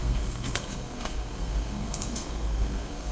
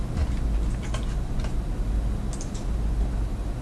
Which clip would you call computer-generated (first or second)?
first